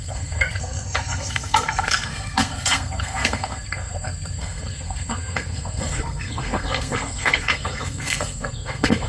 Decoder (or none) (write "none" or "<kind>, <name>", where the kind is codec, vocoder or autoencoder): codec, SNAC